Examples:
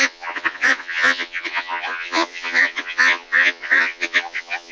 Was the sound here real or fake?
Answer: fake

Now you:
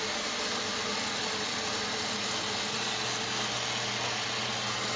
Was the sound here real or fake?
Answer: real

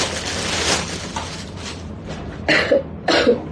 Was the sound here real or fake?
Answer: fake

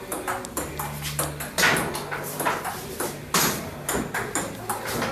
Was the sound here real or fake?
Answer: real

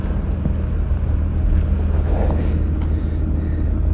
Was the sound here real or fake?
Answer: real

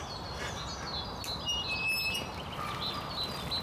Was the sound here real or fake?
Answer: real